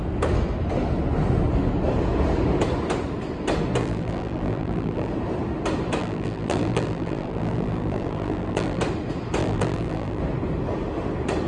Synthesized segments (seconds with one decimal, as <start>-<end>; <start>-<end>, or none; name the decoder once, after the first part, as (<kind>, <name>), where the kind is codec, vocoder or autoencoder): 3.8-5.1 (vocoder, BigVGAN v2); 6.0-8.8; 9.4-10.2